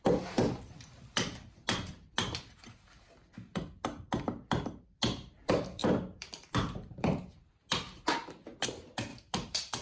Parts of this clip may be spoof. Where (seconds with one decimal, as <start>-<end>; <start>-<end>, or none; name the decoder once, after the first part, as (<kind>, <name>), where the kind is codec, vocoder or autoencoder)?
5.8-7.5 (vocoder, BigVGAN v2); 9.1-9.8

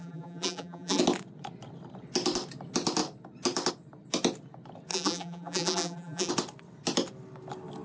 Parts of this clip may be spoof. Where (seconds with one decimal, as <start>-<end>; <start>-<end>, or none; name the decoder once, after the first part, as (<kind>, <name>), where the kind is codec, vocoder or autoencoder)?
0.0-1.0 (vocoder, BigVGAN v2); 4.9-6.3

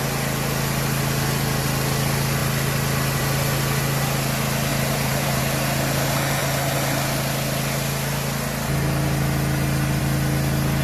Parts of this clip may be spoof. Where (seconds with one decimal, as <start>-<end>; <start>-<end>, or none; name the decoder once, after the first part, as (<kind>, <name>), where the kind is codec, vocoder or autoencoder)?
4.7-5.4 (vocoder, BigVGAN v2)

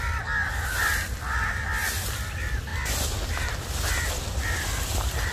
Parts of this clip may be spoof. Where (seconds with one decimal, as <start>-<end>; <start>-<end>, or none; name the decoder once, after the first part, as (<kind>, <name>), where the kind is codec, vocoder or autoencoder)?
none

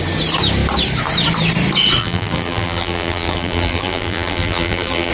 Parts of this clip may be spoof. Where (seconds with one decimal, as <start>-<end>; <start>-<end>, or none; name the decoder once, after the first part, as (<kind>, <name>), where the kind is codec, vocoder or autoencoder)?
2.0-5.1 (vocoder, BigVGAN v2)

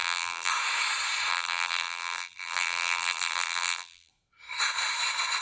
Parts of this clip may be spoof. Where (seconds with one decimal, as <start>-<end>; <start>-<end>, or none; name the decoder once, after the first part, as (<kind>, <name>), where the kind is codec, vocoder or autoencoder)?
0.0-0.5 (vocoder, BigVGAN v2); 1.3-4.1

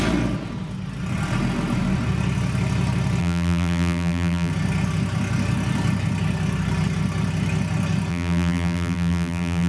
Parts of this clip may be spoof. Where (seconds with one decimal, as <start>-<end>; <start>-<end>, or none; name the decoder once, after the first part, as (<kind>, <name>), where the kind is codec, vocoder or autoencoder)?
3.2-4.5 (vocoder, BigVGAN v2); 8.1-9.7